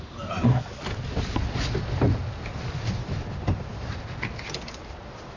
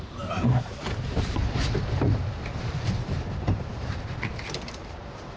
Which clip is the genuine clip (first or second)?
first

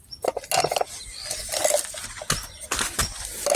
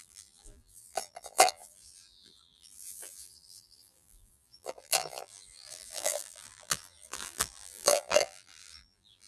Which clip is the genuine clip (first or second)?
first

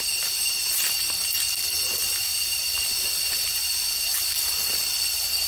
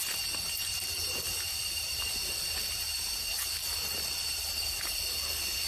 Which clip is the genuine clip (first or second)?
second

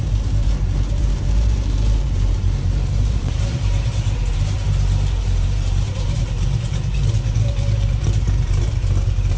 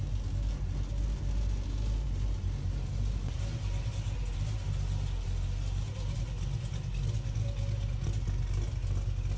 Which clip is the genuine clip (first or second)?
second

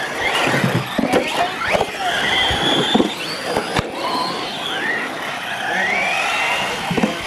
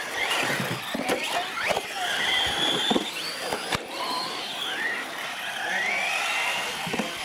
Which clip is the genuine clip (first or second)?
first